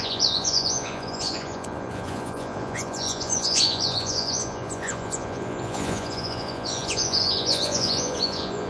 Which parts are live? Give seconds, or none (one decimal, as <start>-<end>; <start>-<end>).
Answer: none